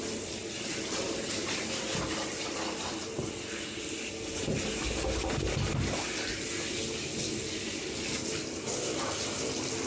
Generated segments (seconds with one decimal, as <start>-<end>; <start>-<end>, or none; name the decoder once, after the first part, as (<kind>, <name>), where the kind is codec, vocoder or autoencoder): none